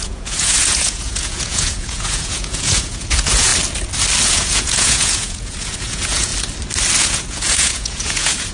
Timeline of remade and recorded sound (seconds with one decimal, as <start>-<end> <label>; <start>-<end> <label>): 0.0-3.5 remade; 3.5-4.2 recorded; 4.2-6.3 remade; 6.3-7.0 recorded; 7.0-8.5 remade